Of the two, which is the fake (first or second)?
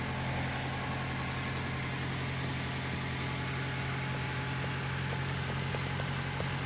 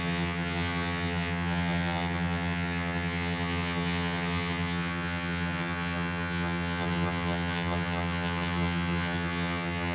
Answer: second